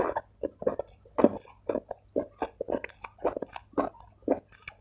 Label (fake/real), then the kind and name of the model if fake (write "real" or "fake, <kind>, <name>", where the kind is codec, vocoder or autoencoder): real